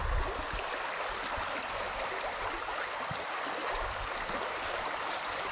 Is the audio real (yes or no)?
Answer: yes